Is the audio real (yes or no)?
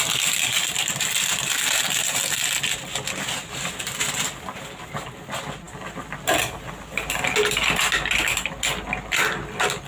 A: yes